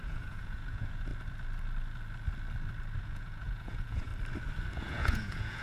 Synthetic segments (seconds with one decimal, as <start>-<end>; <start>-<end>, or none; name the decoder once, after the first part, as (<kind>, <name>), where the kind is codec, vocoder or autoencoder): 0.0-1.1 (vocoder, Vocos); 3.0-4.1; 4.7-5.6